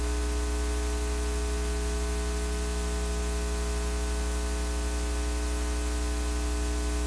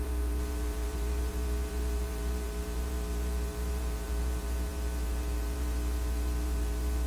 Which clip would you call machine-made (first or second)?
second